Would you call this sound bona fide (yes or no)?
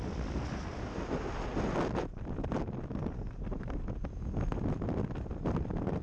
yes